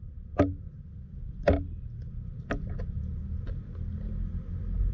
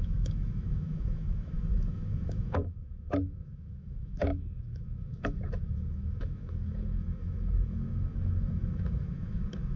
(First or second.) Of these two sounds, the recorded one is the first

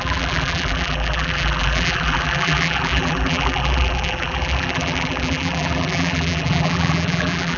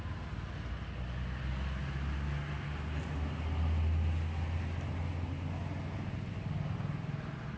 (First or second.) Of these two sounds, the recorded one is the second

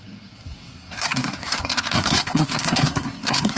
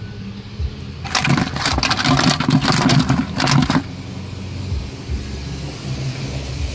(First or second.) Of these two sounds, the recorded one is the second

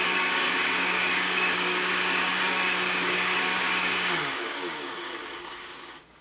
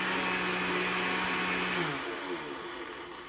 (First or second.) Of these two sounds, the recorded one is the second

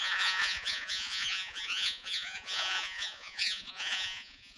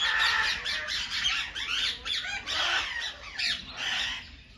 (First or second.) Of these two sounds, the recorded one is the second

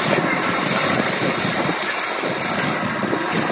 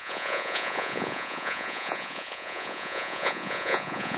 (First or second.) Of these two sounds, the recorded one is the first